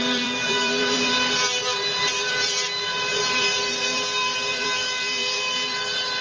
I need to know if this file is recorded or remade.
remade